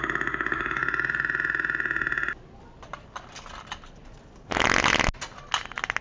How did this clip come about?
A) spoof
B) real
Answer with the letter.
B